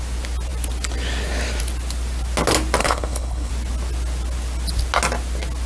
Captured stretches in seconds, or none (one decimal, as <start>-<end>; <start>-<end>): 0.0-2.8; 3.5-5.7